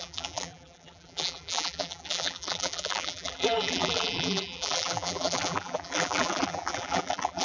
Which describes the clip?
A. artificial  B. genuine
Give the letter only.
A